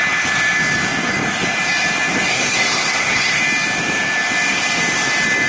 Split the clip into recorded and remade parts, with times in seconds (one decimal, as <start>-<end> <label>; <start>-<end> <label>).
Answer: 0.0-2.3 recorded; 2.3-3.4 remade; 3.4-5.5 recorded